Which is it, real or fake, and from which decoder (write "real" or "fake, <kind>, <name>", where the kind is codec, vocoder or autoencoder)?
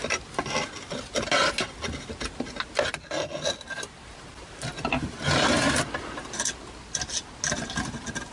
real